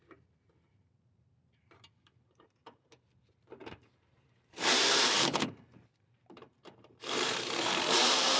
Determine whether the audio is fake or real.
fake